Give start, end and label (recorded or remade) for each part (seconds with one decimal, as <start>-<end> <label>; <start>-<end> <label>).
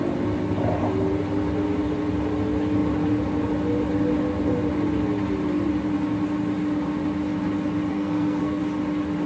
0.0-7.9 recorded; 7.9-8.6 remade; 8.6-9.3 recorded